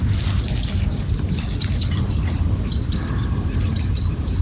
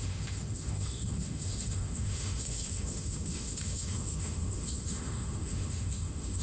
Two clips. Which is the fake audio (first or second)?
second